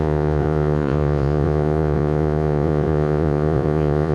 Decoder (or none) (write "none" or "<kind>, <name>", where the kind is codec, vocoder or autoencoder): vocoder, Vocos